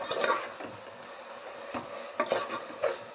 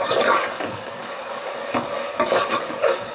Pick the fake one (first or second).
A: second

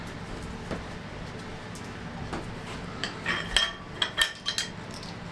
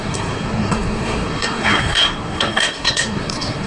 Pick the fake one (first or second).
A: second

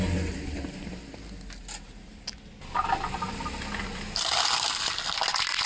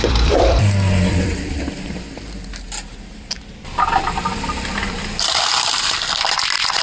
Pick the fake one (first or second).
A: second